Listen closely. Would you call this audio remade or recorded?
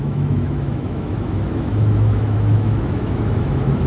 remade